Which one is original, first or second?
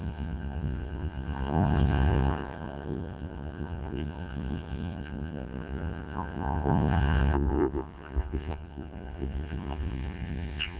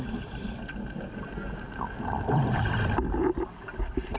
second